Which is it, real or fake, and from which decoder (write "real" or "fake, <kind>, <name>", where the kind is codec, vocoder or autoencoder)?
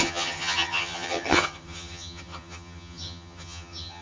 fake, vocoder, HiFi-GAN